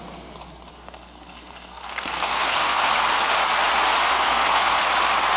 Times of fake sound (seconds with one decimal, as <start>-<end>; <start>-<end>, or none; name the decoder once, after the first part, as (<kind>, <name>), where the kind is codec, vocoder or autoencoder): 0.7-2.9 (codec, SNAC); 4.1-4.8